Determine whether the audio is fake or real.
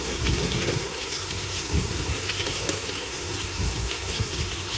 fake